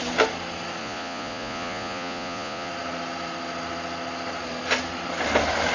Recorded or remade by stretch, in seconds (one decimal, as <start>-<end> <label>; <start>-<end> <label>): 0.0-0.8 recorded; 0.8-2.7 remade; 2.7-5.7 recorded